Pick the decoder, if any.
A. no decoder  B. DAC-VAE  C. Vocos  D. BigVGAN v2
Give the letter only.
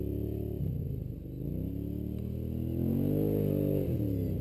A